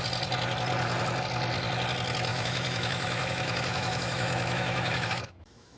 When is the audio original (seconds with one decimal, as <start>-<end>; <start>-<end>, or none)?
0.0-2.3